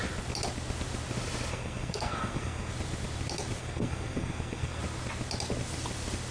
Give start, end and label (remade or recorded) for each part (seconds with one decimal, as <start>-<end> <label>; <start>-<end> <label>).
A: 0.0-1.5 recorded; 1.5-2.7 remade; 2.7-3.6 recorded; 3.6-4.8 remade; 4.8-6.3 recorded